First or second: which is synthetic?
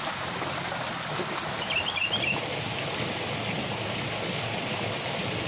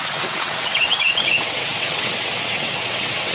second